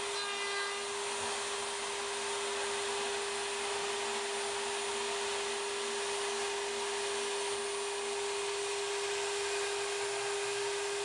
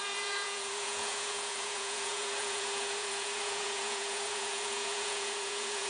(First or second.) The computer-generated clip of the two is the second